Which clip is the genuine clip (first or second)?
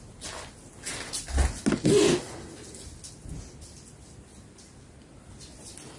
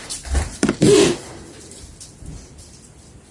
first